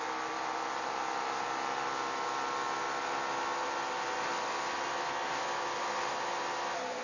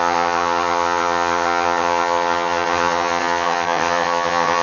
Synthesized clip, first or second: second